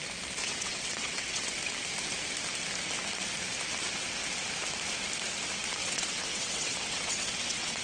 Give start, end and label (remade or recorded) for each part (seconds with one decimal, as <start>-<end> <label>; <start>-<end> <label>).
0.0-0.4 recorded; 0.4-1.6 remade; 1.6-5.8 recorded; 5.8-7.8 remade